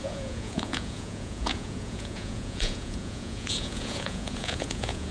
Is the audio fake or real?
fake